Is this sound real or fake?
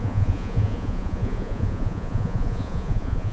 fake